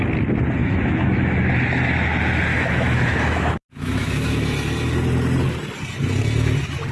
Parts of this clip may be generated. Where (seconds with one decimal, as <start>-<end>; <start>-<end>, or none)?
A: 0.6-1.5; 2.5-4.3